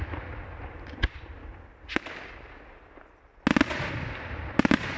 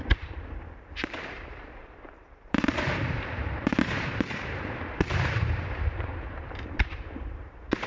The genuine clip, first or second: first